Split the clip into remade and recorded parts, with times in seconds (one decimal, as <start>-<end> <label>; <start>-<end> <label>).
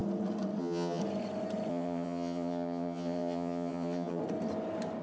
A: 0.0-0.6 recorded; 0.6-1.0 remade; 1.0-1.7 recorded; 1.7-4.2 remade; 4.2-5.0 recorded